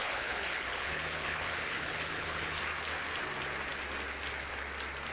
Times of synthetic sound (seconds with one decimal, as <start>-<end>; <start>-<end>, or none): 0.0-2.6